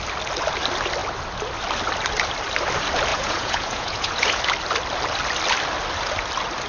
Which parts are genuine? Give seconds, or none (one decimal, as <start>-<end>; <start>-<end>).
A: 0.0-3.1; 4.4-6.7